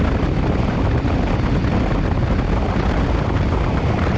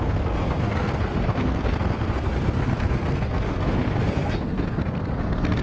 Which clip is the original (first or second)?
first